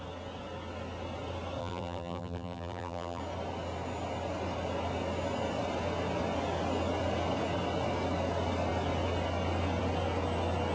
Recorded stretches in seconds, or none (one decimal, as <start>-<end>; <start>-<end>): 0.0-1.6; 3.2-10.7